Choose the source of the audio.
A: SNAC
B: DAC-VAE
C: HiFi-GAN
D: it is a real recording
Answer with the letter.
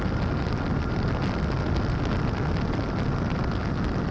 D